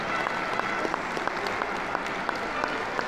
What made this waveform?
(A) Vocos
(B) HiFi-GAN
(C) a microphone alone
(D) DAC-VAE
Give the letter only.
C